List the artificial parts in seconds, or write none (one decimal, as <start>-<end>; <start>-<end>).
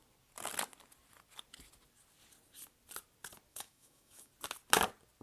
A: 3.5-4.3